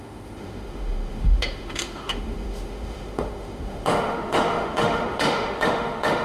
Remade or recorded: remade